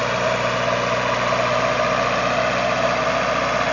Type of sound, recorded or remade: recorded